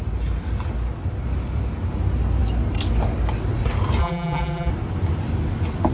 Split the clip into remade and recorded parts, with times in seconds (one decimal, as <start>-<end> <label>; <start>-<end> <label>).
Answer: 0.0-4.0 recorded; 4.0-4.7 remade; 4.7-5.9 recorded